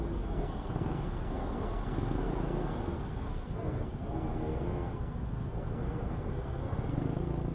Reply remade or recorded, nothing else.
remade